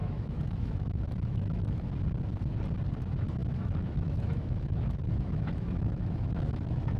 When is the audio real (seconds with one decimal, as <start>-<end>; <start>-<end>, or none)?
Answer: 1.9-3.4